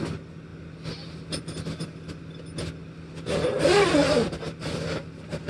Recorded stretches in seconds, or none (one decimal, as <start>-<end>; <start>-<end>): 0.0-5.5